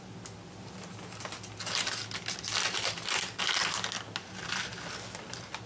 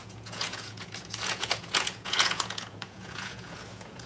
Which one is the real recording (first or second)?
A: first